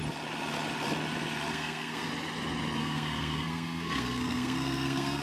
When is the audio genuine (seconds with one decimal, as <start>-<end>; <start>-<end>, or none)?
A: 0.0-1.5; 2.1-2.8